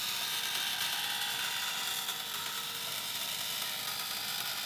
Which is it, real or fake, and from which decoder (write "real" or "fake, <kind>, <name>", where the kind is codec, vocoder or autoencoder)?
real